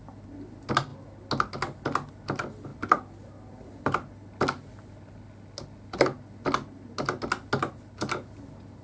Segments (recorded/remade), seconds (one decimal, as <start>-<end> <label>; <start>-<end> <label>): 0.0-8.8 recorded